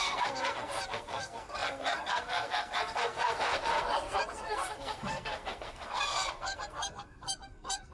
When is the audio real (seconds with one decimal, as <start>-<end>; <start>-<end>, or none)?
none